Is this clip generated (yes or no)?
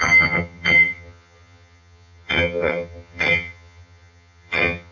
yes